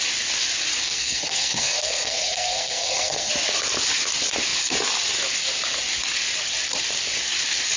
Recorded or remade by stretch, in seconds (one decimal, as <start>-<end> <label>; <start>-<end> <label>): 0.0-0.8 recorded; 0.8-3.3 remade; 3.3-7.8 recorded